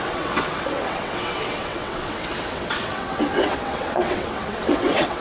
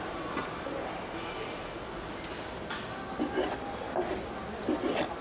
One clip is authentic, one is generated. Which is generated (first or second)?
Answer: first